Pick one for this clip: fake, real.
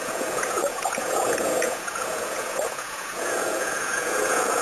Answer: fake